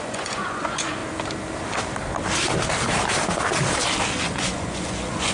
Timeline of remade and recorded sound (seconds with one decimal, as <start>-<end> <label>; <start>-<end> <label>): 0.0-1.0 remade; 1.0-4.2 recorded; 4.2-5.3 remade